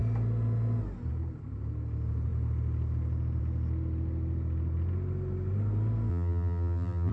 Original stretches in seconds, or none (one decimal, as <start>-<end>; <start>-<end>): 0.0-6.1